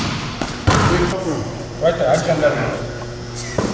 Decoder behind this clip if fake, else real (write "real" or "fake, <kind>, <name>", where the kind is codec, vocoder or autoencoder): fake, vocoder, BigVGAN v2